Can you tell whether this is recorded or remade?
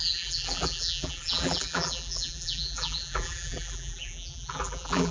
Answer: remade